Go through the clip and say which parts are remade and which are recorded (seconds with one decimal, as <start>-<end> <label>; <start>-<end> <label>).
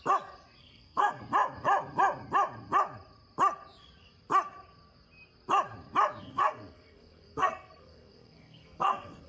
0.0-0.6 recorded; 0.6-1.2 remade; 1.2-6.2 recorded; 6.2-9.3 remade